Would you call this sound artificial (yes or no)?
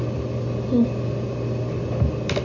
no